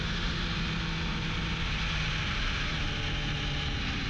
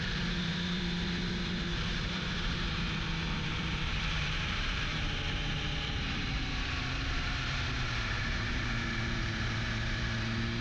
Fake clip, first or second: second